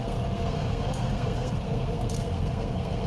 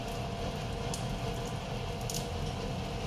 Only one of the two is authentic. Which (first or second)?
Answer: second